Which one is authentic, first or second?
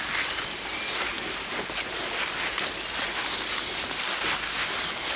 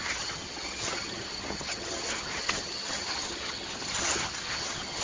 first